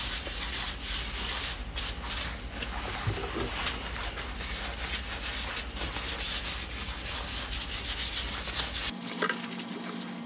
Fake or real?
real